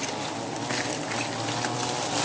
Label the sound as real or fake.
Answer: real